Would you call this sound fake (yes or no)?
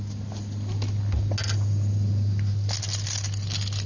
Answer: no